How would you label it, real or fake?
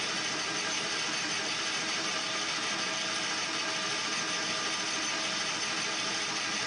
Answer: fake